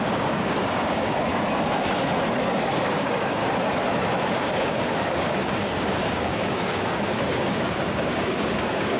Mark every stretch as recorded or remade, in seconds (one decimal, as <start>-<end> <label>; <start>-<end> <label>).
0.0-1.3 remade; 1.3-2.6 recorded; 2.6-3.4 remade; 3.4-4.3 recorded; 4.3-9.0 remade